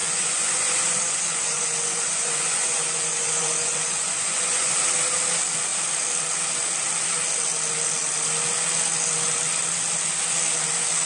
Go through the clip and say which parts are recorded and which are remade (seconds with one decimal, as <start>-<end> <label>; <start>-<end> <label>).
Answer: 0.0-4.7 remade; 4.7-11.1 recorded